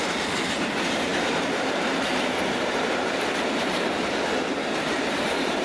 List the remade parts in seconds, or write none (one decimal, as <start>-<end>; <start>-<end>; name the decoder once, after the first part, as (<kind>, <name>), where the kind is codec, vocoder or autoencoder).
0.0-5.6 (vocoder, BigVGAN v2)